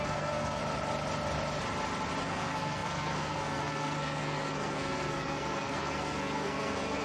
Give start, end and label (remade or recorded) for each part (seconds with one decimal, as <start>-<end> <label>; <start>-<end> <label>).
0.0-0.6 remade; 0.6-2.2 recorded; 2.2-7.0 remade